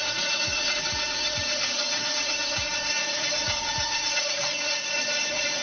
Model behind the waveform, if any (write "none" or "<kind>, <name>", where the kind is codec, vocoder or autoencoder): vocoder, Vocos